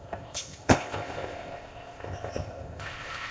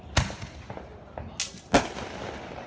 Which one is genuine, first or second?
second